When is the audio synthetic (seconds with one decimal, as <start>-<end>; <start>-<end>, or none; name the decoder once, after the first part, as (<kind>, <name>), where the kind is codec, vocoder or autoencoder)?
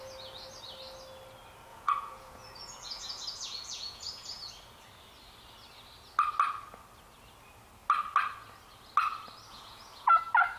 1.7-4.5 (vocoder, Vocos); 9.5-10.2